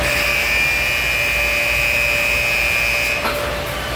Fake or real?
real